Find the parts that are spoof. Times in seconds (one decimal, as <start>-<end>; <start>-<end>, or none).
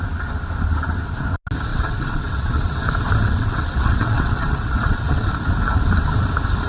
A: 1.7-2.8; 3.2-5.3